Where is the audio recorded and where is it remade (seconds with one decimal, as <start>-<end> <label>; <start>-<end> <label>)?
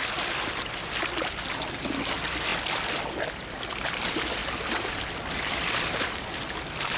0.0-7.0 recorded